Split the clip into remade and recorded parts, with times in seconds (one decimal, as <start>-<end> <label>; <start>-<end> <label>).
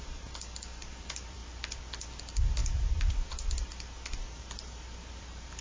0.0-1.4 remade; 1.4-2.2 recorded; 2.2-5.6 remade